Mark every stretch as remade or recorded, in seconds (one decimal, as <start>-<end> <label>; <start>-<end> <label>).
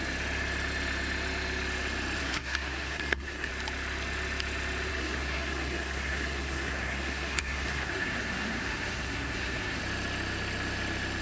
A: 0.0-2.2 recorded; 2.2-3.5 remade; 3.5-4.9 recorded; 4.9-9.8 remade; 9.8-11.2 recorded